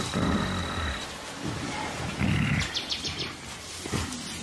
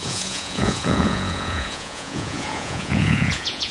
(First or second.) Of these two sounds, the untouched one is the first